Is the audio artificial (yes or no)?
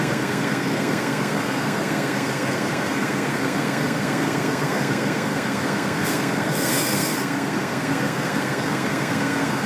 yes